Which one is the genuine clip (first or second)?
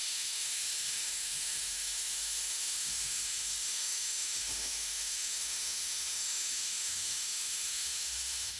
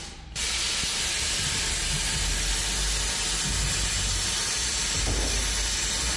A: second